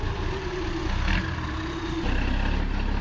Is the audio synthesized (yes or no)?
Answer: no